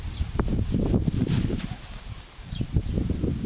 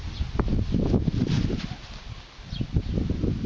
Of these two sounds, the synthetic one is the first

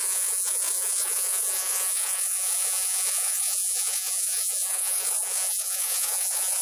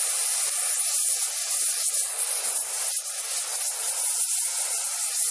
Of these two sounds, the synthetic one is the first